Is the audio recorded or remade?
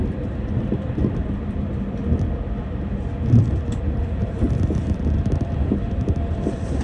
remade